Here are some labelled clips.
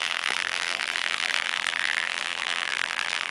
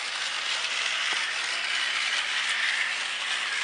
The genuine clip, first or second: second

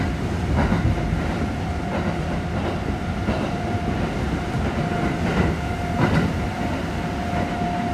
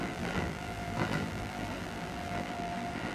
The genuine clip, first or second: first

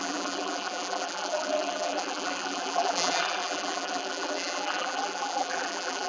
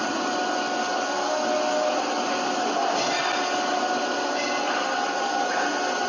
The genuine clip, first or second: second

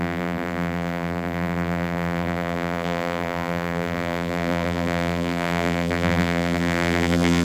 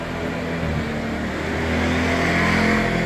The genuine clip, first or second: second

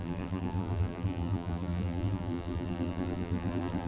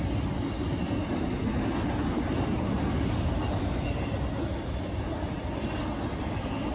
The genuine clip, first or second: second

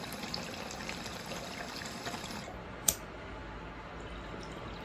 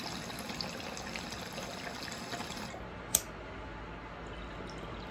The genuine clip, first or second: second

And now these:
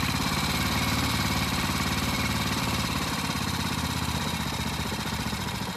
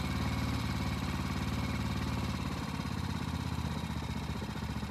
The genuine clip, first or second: second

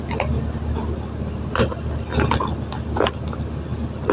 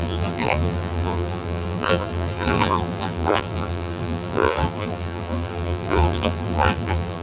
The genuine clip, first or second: first